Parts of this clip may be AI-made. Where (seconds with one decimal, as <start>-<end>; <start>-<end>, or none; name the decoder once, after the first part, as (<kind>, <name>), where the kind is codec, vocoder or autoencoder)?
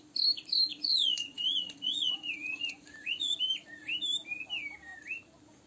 0.7-3.4 (vocoder, Vocos)